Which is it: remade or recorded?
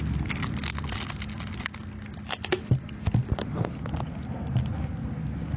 recorded